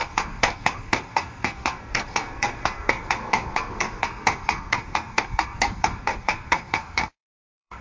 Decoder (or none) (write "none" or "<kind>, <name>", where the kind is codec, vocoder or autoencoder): codec, SNAC